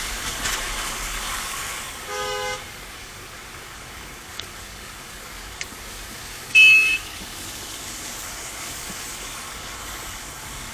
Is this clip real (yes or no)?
no